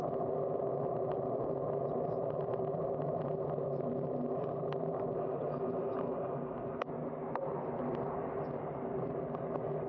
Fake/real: real